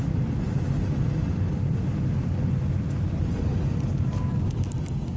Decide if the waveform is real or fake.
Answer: real